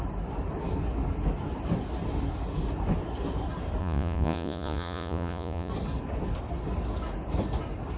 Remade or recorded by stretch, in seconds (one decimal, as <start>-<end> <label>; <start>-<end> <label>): 0.0-3.8 recorded; 3.8-5.7 remade; 5.7-8.0 recorded